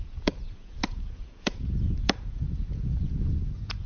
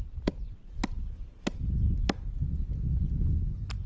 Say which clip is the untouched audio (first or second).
second